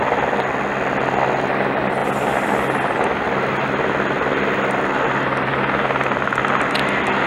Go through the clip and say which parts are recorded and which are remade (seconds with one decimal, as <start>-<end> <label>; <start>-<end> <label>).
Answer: 0.0-7.3 recorded